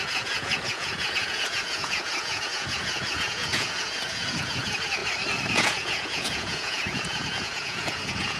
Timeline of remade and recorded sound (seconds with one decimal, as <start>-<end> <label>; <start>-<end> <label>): 0.0-5.0 remade; 5.0-5.5 recorded; 5.5-8.4 remade